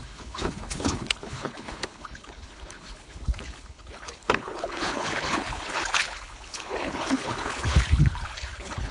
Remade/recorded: remade